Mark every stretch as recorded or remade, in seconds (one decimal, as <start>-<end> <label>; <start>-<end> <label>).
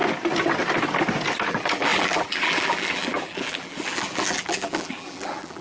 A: 0.0-1.5 recorded; 1.5-5.6 remade